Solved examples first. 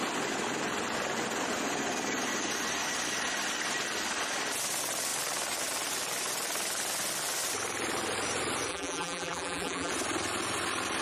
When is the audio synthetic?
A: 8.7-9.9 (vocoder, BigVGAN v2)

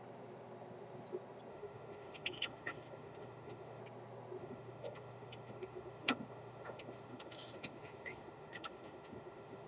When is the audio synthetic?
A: 1.5-3.8 (autoencoder, DAC-VAE); 4.4-9.7

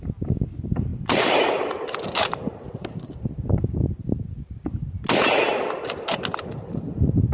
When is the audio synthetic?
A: none

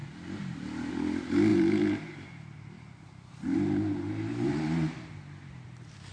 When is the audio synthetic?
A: 1.5-4.5 (vocoder, BigVGAN v2)

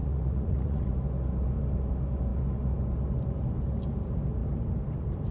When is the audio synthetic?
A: 0.0-0.9 (vocoder, Vocos)

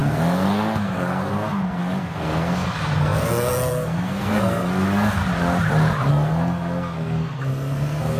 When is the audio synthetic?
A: 0.0-5.2 (codec, SNAC); 6.1-8.2

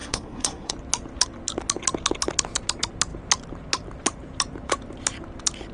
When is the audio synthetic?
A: 0.0-0.7 (codec, SNAC)

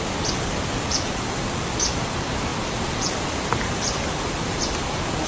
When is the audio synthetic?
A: 2.5-4.6 (vocoder, BigVGAN v2)